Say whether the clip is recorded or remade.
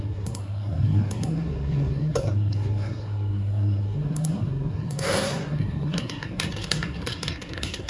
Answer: remade